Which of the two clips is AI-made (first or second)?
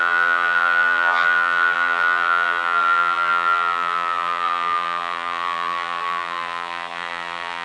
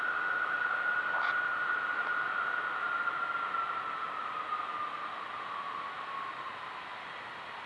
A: first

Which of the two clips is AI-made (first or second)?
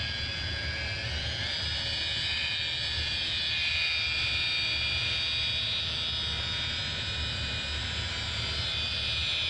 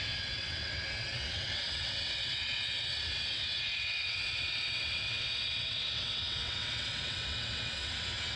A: second